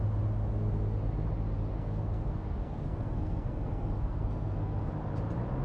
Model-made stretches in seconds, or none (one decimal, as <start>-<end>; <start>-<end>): 1.7-4.9